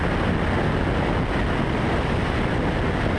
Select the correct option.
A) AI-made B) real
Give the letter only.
B